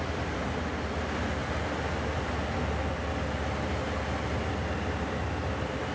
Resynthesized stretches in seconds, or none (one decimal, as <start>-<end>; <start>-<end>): none